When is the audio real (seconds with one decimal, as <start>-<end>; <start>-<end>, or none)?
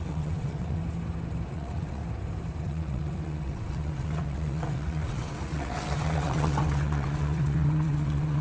0.8-1.5; 2.0-2.6